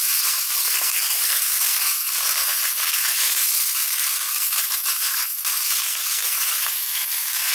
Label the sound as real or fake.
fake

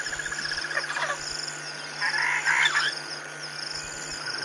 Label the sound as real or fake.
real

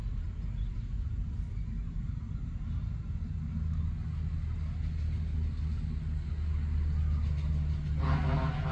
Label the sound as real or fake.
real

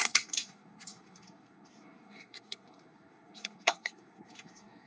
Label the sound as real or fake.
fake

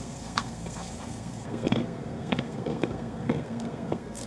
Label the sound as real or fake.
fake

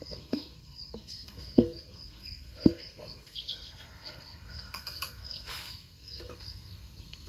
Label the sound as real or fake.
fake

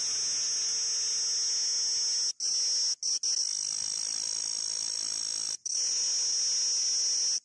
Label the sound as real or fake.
real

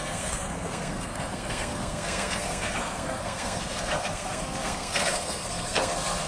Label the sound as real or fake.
fake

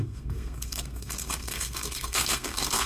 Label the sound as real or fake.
fake